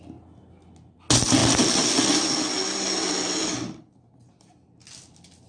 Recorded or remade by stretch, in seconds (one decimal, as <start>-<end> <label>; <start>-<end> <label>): 0.0-5.5 recorded